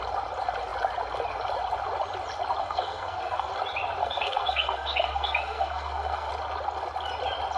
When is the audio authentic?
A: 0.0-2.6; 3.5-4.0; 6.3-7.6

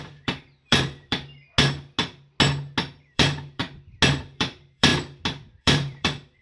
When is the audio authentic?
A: 1.3-3.0; 3.6-4.2; 4.9-5.6

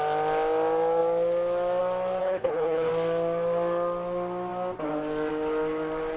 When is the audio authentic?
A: 0.0-2.2; 2.9-6.2

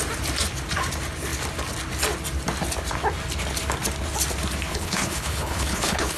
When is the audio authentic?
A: 0.0-4.7